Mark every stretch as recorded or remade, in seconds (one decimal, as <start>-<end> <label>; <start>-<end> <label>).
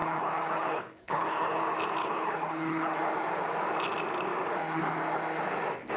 0.0-1.6 remade; 1.6-2.0 recorded; 2.0-3.0 remade; 3.0-6.0 recorded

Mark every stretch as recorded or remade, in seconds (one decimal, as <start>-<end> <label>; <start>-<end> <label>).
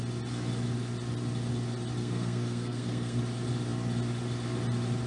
0.0-2.0 recorded; 2.0-3.2 remade; 3.2-5.1 recorded